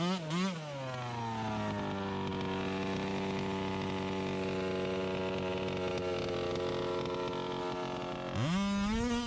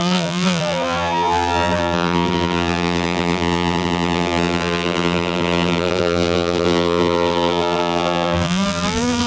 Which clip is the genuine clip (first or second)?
first